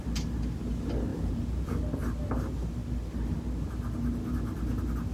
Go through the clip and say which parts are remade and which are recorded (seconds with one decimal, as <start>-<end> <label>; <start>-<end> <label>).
0.0-1.1 recorded; 1.1-1.8 remade; 1.8-5.1 recorded